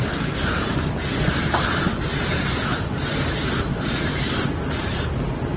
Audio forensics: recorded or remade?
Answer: recorded